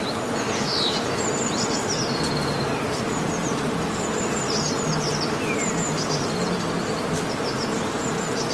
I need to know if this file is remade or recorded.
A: recorded